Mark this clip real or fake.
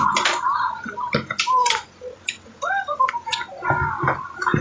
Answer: real